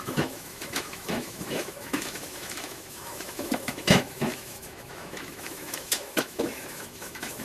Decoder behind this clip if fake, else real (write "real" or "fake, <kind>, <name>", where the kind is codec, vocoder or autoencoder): fake, autoencoder, DAC-VAE